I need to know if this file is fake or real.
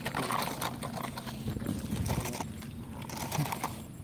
real